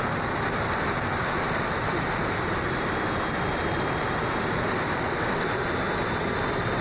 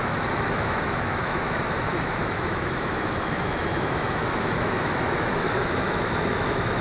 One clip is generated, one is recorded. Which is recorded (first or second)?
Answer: first